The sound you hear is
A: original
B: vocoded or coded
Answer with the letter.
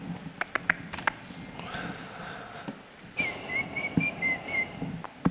A